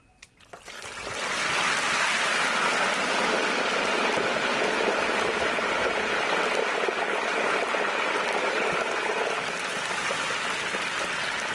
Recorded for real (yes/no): yes